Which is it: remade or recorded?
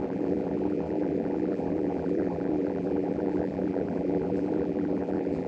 remade